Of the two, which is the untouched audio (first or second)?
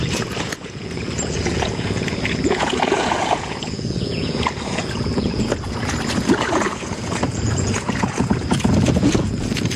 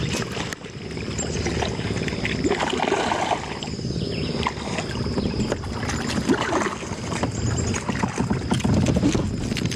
second